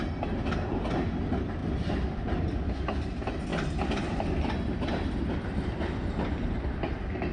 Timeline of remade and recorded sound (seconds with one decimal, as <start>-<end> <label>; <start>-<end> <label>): 0.0-1.6 recorded; 1.6-2.3 remade; 2.3-3.5 recorded; 3.5-5.3 remade; 5.3-7.3 recorded